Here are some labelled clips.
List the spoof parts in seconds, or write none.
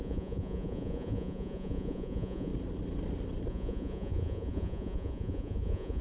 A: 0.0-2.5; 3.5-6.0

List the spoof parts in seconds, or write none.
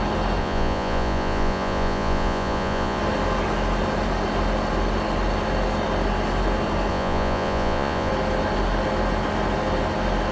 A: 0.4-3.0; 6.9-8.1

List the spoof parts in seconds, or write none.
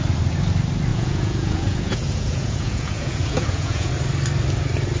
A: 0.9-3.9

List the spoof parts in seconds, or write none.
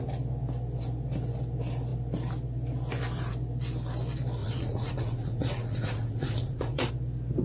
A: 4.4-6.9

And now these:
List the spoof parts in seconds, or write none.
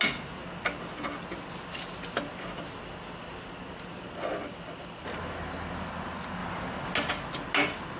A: none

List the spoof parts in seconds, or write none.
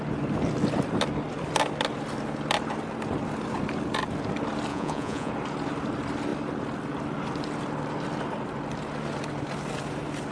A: 4.7-5.3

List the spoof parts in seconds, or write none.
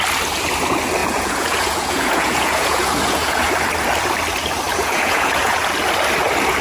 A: 1.0-3.5; 4.7-5.7